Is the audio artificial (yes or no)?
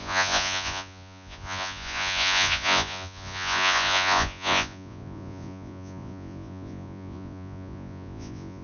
yes